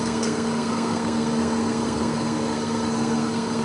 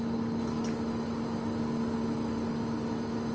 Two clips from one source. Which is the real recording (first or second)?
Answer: second